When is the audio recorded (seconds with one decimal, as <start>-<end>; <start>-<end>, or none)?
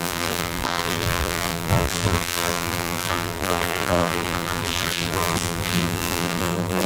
none